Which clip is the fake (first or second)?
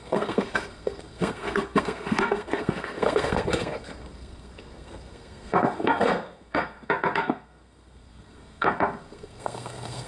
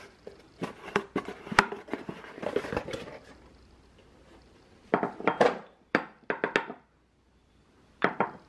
first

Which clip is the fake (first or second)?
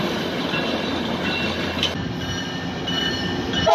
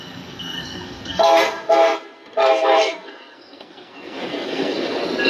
second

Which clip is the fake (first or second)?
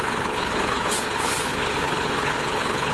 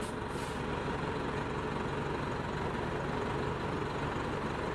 first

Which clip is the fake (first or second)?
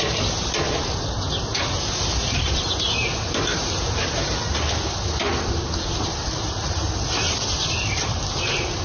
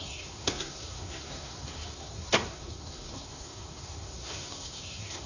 second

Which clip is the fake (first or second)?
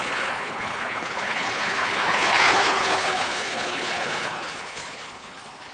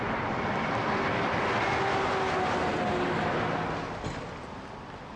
first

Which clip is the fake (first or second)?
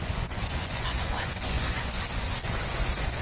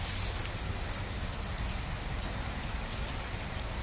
first